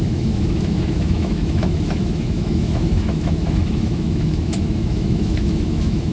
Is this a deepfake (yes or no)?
yes